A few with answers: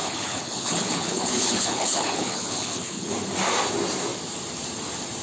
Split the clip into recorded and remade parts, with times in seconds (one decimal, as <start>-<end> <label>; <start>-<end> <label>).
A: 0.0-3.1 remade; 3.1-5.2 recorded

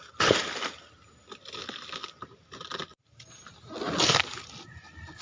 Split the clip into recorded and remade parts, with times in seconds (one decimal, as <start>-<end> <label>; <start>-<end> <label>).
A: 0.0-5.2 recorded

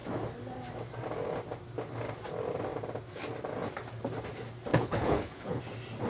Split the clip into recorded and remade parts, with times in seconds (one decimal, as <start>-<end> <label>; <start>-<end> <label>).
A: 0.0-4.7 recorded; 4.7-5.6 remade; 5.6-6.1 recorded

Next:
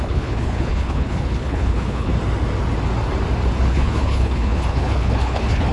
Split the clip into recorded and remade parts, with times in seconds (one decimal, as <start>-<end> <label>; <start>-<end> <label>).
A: 0.0-2.1 remade; 2.1-3.7 recorded; 3.7-5.7 remade